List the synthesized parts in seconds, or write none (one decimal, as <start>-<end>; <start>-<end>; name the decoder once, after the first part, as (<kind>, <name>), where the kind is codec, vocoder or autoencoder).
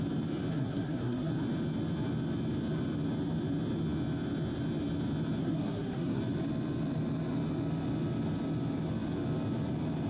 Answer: 0.5-1.3 (codec, SNAC); 5.4-6.2